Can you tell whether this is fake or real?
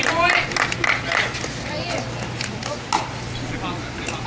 real